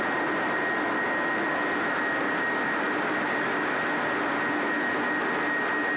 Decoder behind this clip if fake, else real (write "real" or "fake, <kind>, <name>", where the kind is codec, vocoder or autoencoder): real